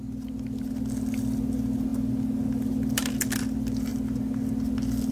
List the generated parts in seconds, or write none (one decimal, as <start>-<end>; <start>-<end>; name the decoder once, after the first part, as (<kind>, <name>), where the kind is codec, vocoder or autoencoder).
none